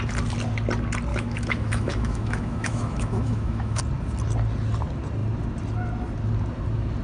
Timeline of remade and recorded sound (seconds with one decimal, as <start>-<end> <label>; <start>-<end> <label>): 0.0-1.1 recorded; 1.1-3.8 remade; 3.8-7.0 recorded